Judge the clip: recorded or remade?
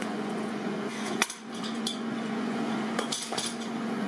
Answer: remade